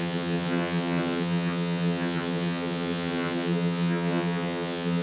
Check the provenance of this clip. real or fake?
fake